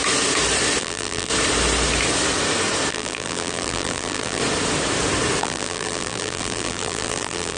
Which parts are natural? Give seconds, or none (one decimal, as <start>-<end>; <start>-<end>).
0.0-0.8; 1.3-2.9; 4.4-5.4